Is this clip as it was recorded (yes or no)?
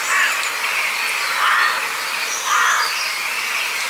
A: yes